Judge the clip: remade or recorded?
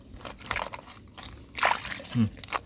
recorded